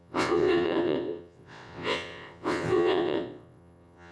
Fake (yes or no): yes